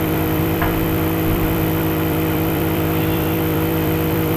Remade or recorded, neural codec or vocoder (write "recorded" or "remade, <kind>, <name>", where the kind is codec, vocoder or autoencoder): remade, vocoder, BigVGAN v2